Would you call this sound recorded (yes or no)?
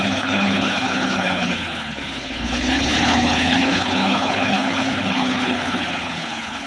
no